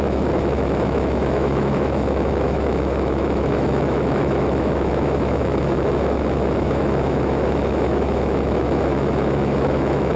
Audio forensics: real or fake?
fake